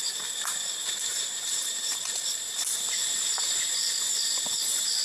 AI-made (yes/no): no